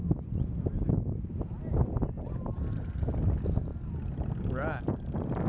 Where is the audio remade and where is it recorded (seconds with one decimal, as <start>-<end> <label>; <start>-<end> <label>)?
0.0-5.5 recorded